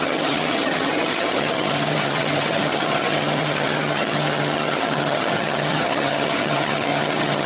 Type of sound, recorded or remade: remade